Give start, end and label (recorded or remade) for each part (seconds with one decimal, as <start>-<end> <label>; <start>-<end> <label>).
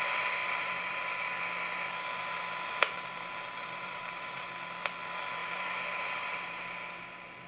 0.0-0.4 recorded; 0.4-1.0 remade; 1.0-3.6 recorded; 3.6-4.5 remade; 4.5-5.4 recorded; 5.4-6.6 remade; 6.6-7.5 recorded